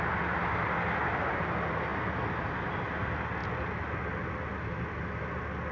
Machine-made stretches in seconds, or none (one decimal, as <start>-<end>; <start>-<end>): none